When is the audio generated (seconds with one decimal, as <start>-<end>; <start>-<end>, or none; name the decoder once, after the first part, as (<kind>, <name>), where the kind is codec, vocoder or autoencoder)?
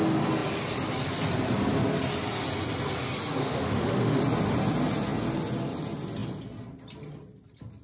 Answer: 3.4-4.2 (autoencoder, DAC-VAE)